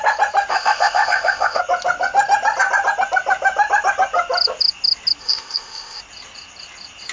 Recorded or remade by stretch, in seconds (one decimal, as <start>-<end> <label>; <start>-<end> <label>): 0.0-0.5 recorded; 0.5-1.6 remade; 1.6-5.2 recorded; 5.2-6.0 remade; 6.0-7.1 recorded